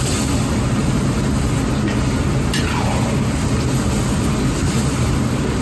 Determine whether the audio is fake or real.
real